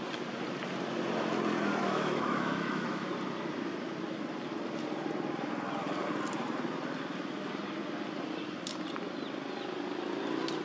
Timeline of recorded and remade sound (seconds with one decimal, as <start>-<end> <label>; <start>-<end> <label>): 0.0-1.8 recorded; 1.8-3.1 remade; 3.1-10.6 recorded